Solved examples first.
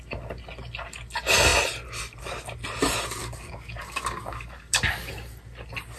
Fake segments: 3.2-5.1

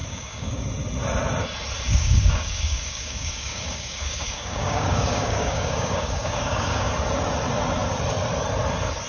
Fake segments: 0.0-0.6; 1.9-6.9